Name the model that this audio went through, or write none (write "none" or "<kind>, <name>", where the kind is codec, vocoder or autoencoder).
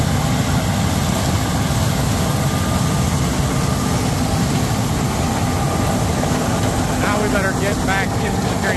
none